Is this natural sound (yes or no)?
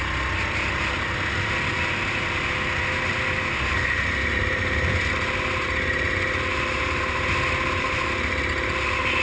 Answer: yes